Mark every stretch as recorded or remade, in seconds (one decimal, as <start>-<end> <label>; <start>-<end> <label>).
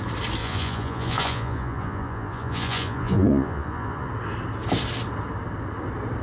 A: 0.0-0.4 recorded; 0.4-4.1 remade; 4.1-6.2 recorded